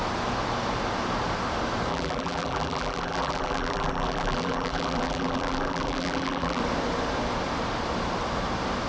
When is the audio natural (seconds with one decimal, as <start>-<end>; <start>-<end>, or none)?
0.0-1.9; 6.6-8.9

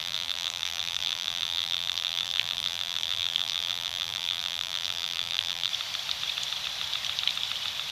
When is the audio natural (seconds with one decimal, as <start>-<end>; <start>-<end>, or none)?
5.7-7.9

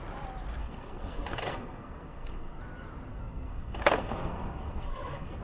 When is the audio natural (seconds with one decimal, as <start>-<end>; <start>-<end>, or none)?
0.0-0.6; 2.6-3.1

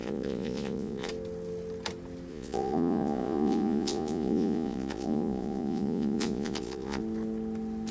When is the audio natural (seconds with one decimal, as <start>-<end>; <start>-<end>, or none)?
1.1-2.3; 7.0-7.9

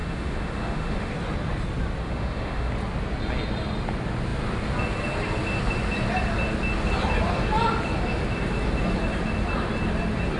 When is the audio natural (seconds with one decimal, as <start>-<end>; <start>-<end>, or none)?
1.1-2.0; 2.7-10.4

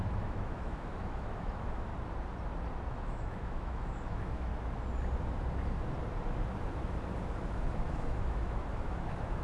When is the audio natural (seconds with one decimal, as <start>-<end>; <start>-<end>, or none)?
1.9-2.9; 4.5-7.4

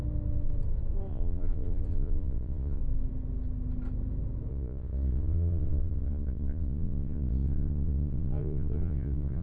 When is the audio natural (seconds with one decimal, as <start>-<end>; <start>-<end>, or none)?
0.0-1.1; 2.8-4.5

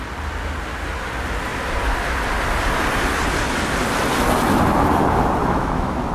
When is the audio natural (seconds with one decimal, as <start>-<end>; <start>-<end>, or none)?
0.0-5.4